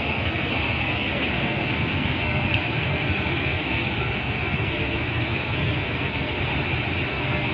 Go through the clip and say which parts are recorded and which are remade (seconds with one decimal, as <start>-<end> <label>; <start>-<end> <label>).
0.0-6.5 remade; 6.5-7.1 recorded; 7.1-7.5 remade